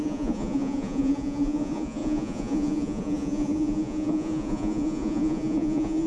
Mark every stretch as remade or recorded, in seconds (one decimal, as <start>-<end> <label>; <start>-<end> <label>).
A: 0.0-6.1 remade